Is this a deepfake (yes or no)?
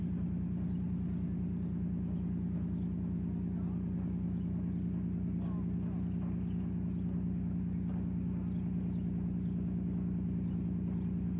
no